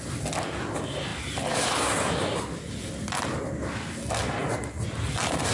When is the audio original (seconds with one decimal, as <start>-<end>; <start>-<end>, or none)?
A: 0.0-5.5